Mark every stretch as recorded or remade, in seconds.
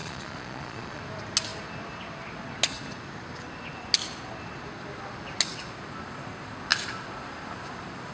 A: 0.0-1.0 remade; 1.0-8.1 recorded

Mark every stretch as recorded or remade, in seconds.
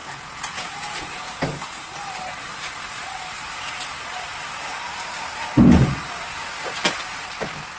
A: 0.0-1.4 remade; 1.4-7.8 recorded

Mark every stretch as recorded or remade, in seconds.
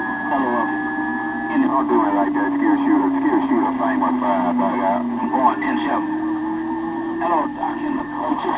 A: 0.0-8.6 recorded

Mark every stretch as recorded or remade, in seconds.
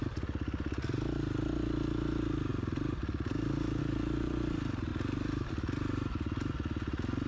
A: 0.0-7.3 recorded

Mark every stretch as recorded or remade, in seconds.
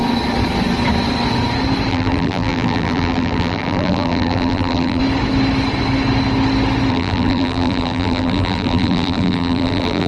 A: 0.0-1.9 recorded; 1.9-5.0 remade; 5.0-6.9 recorded; 6.9-10.1 remade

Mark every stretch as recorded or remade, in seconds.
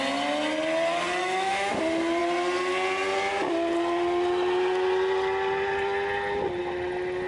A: 0.0-1.2 recorded; 1.2-1.8 remade; 1.8-7.3 recorded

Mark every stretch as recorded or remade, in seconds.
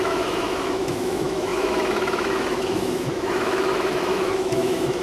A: 0.0-5.0 remade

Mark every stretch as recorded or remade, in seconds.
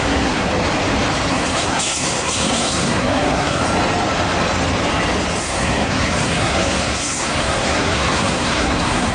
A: 0.0-0.5 remade; 0.5-1.3 recorded; 1.3-3.6 remade; 3.6-5.4 recorded; 5.4-9.1 remade